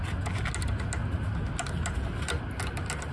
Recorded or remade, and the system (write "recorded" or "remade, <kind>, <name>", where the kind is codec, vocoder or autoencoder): recorded